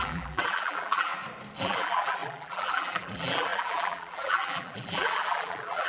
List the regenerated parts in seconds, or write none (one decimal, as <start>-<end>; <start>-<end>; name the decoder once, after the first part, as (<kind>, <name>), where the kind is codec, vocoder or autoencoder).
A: 0.0-1.1 (vocoder, BigVGAN v2); 1.6-5.9